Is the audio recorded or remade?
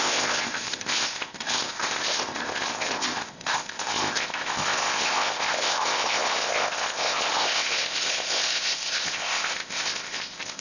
remade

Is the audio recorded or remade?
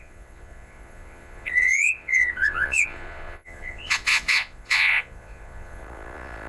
remade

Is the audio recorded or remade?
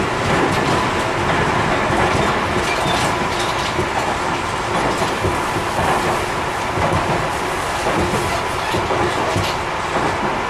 recorded